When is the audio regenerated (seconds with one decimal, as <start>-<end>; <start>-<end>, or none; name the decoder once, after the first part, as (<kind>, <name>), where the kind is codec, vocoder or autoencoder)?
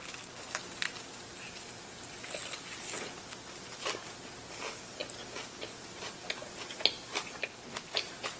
none